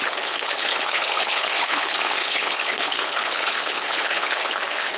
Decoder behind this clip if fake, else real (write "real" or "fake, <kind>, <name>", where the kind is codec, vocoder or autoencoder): fake, codec, HILCodec